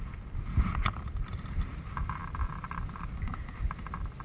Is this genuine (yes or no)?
yes